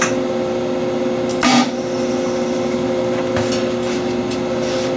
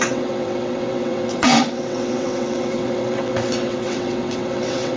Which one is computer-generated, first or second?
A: second